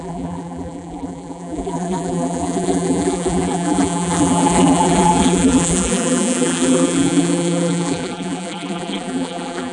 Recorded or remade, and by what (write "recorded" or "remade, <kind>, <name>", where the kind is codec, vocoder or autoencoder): remade, vocoder, BigVGAN v2